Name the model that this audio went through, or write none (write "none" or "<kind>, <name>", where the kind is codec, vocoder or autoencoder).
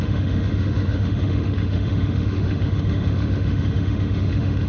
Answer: autoencoder, DAC-VAE